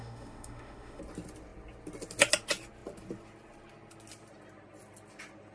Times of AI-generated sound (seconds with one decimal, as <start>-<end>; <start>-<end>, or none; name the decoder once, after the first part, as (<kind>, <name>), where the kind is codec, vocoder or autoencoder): 0.0-1.0 (autoencoder, DAC-VAE)